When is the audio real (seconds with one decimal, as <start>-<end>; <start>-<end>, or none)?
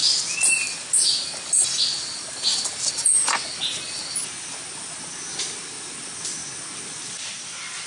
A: 0.0-7.9